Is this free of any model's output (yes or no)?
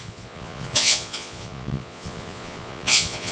no